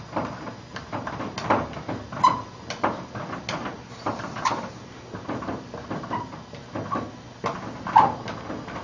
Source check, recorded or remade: recorded